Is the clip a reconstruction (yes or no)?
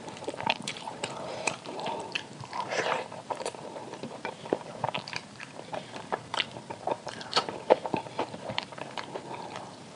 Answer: yes